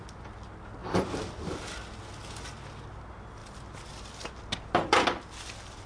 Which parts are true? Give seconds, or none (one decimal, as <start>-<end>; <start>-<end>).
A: 0.0-5.9